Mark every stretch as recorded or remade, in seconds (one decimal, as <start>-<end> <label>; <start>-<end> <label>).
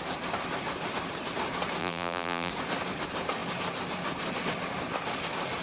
0.0-1.8 recorded; 1.8-2.5 remade; 2.5-5.6 recorded